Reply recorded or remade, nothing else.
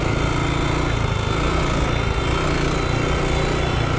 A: recorded